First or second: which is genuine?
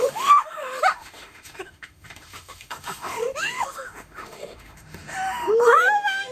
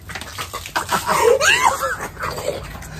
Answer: second